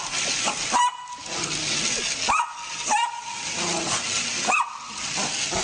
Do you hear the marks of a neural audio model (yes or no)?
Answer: no